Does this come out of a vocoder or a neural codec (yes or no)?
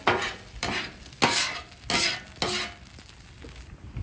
no